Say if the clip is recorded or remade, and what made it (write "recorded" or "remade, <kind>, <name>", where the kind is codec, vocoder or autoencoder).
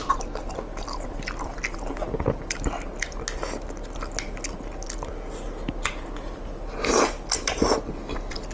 recorded